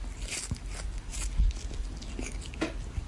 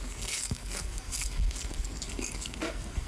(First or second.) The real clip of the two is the first